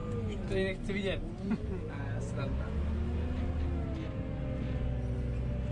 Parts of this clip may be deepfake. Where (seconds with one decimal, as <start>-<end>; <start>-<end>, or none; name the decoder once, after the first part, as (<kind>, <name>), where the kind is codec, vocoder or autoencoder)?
none